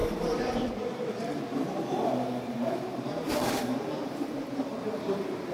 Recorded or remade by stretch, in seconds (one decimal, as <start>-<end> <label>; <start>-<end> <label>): 0.0-5.5 remade